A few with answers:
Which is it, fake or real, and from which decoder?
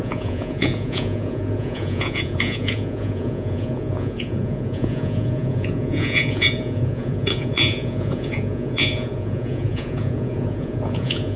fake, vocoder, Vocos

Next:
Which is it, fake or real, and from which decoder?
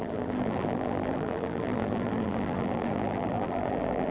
fake, vocoder, BigVGAN v2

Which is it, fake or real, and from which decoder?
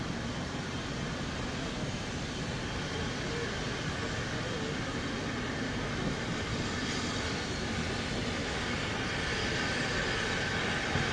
real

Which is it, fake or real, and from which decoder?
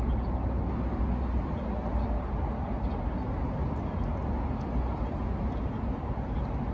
real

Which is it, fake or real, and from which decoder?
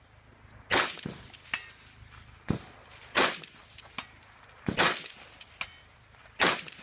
real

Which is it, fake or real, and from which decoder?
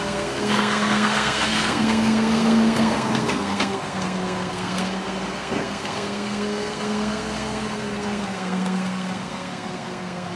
fake, codec, SNAC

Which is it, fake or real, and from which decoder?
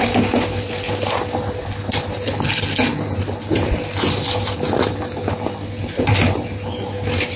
real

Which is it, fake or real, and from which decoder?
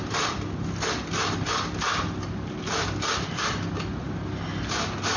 real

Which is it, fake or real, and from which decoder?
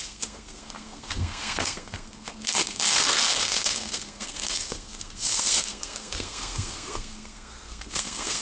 fake, codec, SNAC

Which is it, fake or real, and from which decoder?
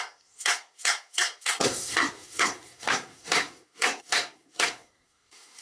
fake, codec, SNAC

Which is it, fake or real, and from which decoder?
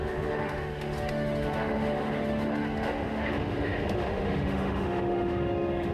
fake, autoencoder, DAC-VAE